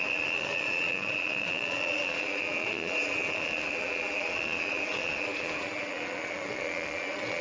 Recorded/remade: remade